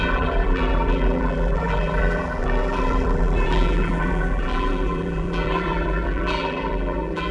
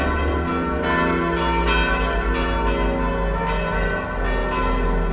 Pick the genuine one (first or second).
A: second